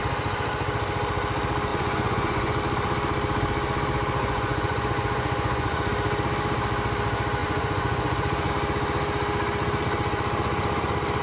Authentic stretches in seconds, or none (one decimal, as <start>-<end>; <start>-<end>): 0.0-1.7; 2.6-4.2; 5.9-7.4; 8.5-11.2